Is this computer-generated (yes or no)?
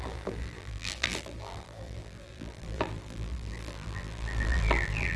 yes